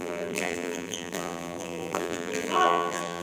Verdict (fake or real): fake